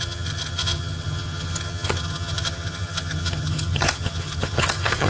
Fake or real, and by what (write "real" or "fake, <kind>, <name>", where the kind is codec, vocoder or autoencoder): fake, vocoder, HiFi-GAN